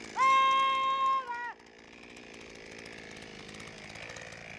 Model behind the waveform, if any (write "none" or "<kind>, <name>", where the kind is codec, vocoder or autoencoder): none